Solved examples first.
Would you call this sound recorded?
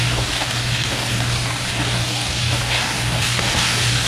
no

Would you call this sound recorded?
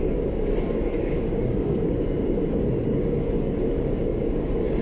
no